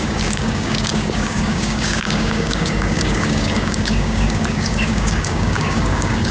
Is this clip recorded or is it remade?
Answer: remade